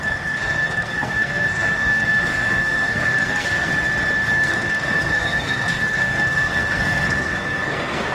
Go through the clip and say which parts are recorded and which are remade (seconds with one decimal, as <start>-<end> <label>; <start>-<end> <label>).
0.0-3.7 remade; 3.7-4.3 recorded; 4.3-8.1 remade